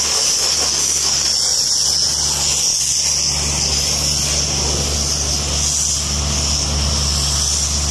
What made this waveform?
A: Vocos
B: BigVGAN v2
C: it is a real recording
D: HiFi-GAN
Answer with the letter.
C